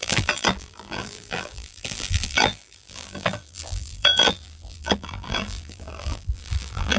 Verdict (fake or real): fake